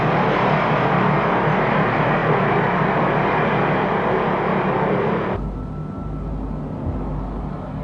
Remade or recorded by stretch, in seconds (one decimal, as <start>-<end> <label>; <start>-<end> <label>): 0.0-7.8 recorded